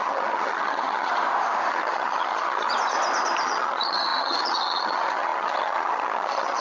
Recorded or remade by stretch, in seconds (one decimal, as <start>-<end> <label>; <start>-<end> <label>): 0.0-1.1 remade; 1.1-1.7 recorded; 1.7-2.7 remade; 2.7-3.4 recorded; 3.4-6.6 remade